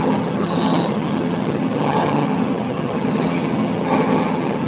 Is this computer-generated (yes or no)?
yes